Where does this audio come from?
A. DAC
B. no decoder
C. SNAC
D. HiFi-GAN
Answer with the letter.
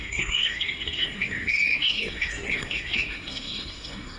C